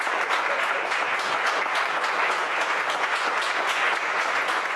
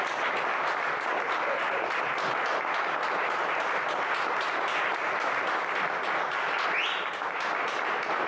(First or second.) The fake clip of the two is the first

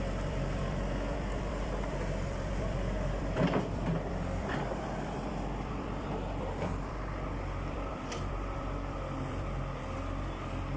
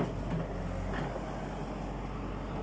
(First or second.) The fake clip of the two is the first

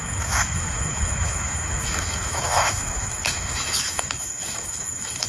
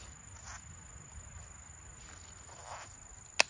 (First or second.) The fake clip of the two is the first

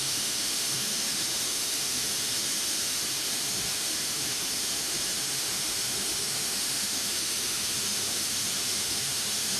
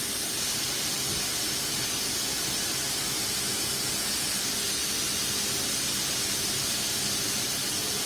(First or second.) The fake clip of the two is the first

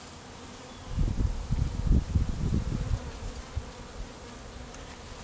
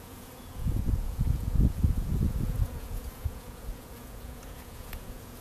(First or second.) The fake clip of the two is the second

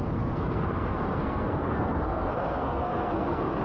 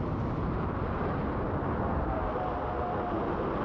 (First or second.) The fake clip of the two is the first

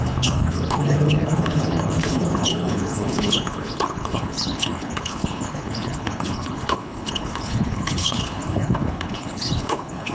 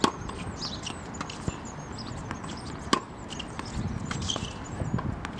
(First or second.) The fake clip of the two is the first